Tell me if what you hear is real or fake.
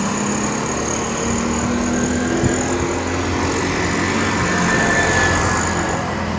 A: real